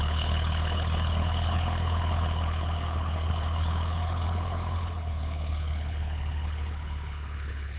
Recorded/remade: remade